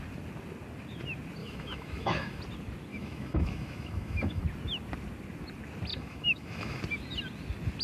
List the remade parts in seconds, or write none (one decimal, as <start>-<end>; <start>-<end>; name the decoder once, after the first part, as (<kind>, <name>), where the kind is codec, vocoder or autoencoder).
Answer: 1.4-2.4 (autoencoder, DAC-VAE); 2.9-4.4; 5.9-6.8